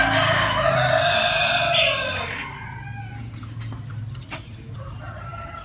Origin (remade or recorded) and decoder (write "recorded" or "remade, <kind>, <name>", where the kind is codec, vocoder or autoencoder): recorded